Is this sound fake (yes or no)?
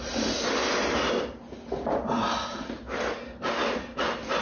no